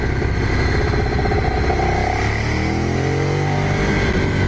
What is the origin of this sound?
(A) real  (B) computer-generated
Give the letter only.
A